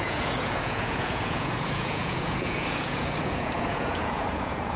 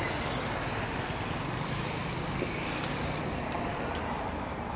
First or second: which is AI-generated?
first